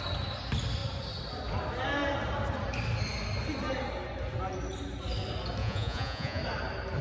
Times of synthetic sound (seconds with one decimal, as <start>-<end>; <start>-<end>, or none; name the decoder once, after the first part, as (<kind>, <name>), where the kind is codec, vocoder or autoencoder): 5.6-6.4 (vocoder, Vocos)